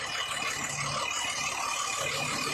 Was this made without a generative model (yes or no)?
yes